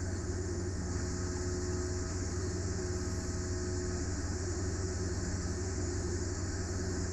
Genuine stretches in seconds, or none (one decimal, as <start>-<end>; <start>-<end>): 1.0-2.1; 2.8-4.0